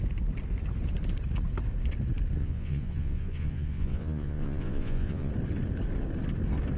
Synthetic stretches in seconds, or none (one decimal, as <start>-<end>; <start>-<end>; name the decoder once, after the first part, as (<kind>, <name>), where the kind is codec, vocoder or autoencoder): 2.4-5.3 (vocoder, Vocos)